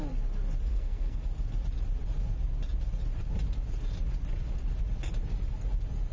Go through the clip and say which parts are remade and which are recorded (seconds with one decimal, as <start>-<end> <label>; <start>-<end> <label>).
0.0-0.7 recorded; 0.7-1.2 remade; 1.2-6.1 recorded